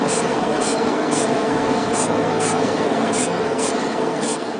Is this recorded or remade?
remade